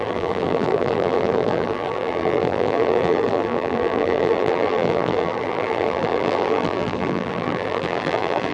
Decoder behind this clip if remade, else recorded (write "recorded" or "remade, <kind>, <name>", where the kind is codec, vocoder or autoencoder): remade, vocoder, BigVGAN v2